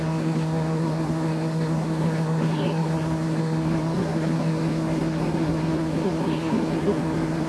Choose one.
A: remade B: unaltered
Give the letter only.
A